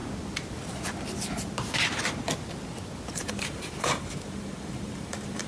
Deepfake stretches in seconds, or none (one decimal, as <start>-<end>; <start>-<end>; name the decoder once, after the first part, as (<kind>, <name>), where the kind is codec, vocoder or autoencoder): 3.1-5.5 (vocoder, BigVGAN v2)